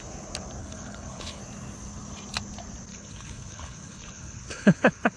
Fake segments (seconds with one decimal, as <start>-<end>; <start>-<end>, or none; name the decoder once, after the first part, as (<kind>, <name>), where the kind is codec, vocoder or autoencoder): 0.6-1.4 (codec, HILCodec); 2.9-5.2